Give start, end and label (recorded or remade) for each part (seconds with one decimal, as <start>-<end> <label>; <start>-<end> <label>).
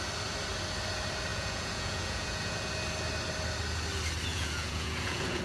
0.0-1.3 recorded; 1.3-2.7 remade; 2.7-4.3 recorded; 4.3-5.4 remade